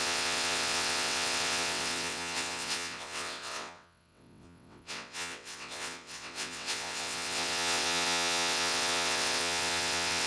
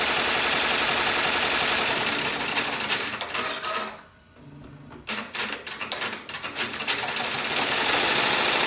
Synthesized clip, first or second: first